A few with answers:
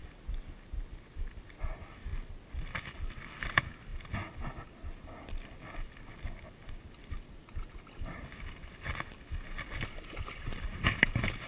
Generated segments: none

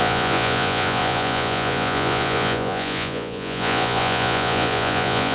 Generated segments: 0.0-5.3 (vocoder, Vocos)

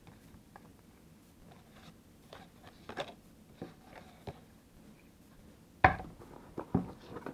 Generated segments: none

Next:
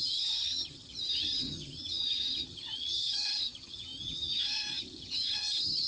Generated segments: 0.0-5.9 (vocoder, HiFi-GAN)

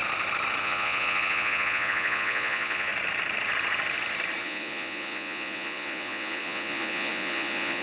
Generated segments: 0.6-2.9 (vocoder, Vocos); 4.4-7.8